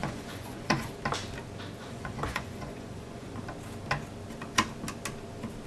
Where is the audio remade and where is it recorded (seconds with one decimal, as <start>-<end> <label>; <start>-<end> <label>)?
0.0-0.9 remade; 0.9-1.8 recorded; 1.8-3.4 remade; 3.4-5.7 recorded